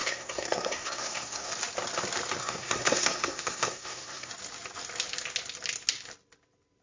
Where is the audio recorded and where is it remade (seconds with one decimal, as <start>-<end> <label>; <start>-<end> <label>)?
0.0-1.5 remade; 1.5-2.4 recorded; 2.4-4.3 remade; 4.3-6.8 recorded

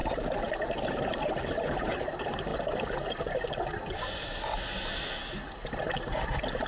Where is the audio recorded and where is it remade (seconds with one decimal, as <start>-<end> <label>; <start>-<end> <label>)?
0.0-0.5 remade; 0.5-6.7 recorded

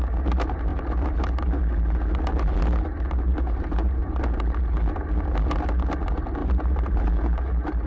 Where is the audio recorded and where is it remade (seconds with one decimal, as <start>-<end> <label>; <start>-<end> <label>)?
0.0-3.3 recorded; 3.3-4.0 remade; 4.0-6.4 recorded; 6.4-7.1 remade; 7.1-7.9 recorded